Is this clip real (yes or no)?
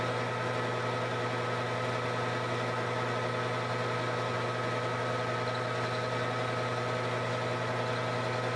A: yes